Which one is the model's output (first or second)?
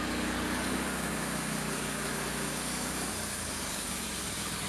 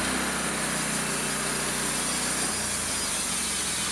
first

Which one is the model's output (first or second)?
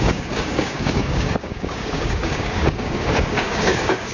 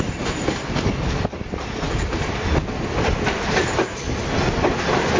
first